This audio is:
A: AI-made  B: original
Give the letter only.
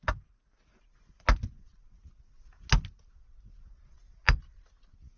B